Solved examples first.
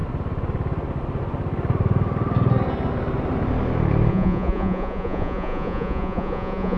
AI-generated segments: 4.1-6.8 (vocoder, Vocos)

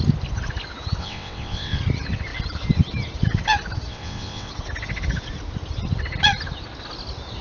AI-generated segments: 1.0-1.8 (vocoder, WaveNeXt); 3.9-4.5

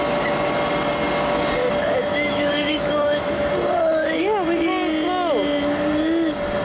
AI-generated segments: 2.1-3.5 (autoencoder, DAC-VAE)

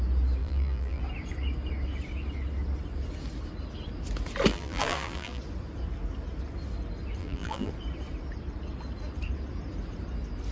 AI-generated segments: 0.4-1.0 (vocoder, BigVGAN v2); 4.5-5.4; 7.2-7.7

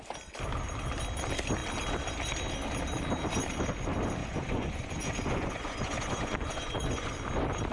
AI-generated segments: 4.2-7.1 (vocoder, Vocos)

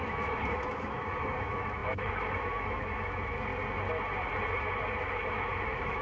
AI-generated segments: 0.0-3.5 (autoencoder, DAC-VAE); 4.9-6.0

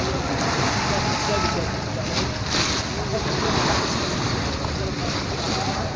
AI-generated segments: 3.1-4.4 (vocoder, BigVGAN v2); 5.0-6.0